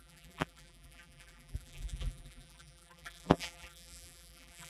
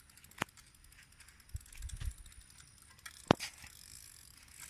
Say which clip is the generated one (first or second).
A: first